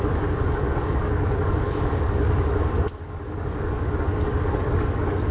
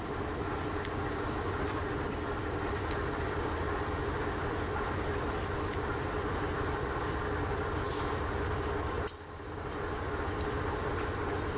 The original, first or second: second